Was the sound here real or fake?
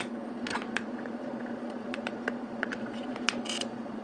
fake